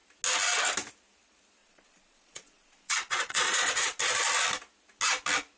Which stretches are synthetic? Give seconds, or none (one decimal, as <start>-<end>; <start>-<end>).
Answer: 1.6-4.0